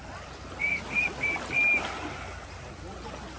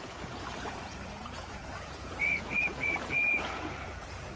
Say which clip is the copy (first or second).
second